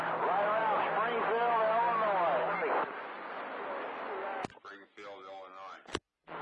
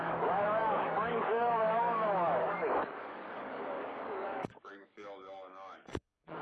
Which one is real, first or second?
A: first